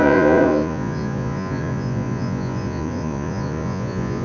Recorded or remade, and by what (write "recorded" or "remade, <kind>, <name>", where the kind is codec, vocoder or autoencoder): remade, vocoder, Vocos